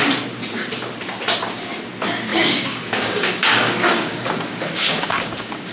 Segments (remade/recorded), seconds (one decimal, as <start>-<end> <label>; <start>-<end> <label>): 0.0-2.3 recorded; 2.3-5.7 remade